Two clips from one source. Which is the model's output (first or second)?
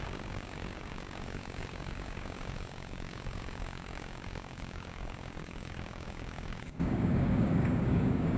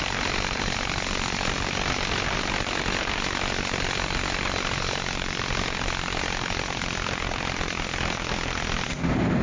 first